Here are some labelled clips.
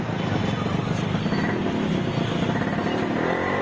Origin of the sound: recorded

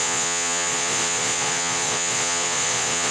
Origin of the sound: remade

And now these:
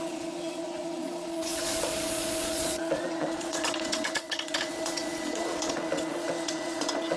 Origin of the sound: remade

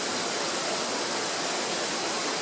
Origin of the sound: recorded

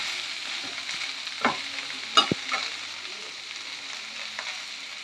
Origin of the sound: recorded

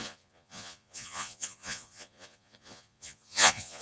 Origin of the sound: remade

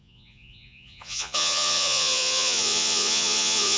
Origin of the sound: remade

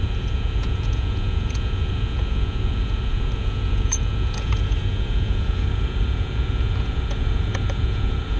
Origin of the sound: remade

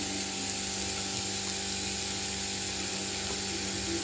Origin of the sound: recorded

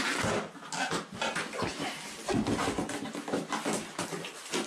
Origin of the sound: recorded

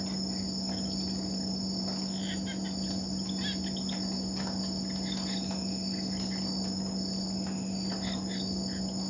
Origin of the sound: recorded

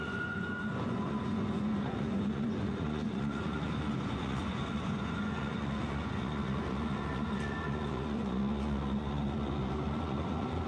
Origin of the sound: remade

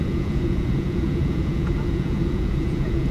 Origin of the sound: remade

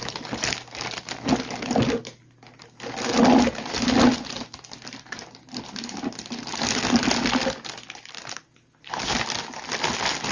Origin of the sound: recorded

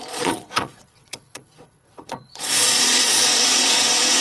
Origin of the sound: remade